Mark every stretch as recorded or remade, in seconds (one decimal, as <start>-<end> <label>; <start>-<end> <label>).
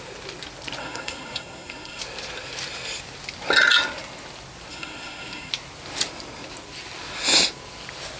0.0-0.8 recorded; 0.8-2.0 remade; 2.0-4.7 recorded; 4.7-5.5 remade; 5.5-8.2 recorded